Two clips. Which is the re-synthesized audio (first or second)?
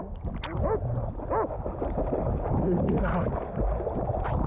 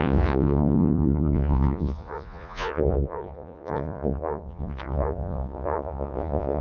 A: second